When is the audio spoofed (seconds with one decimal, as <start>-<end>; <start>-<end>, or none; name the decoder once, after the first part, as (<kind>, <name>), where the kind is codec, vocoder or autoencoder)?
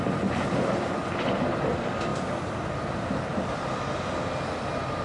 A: none